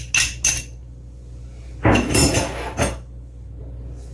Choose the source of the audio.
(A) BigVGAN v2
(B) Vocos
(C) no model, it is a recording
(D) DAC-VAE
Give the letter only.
C